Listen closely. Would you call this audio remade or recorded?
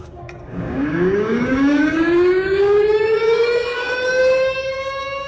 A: remade